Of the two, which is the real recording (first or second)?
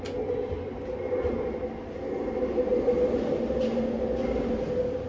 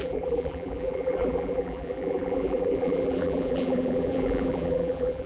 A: first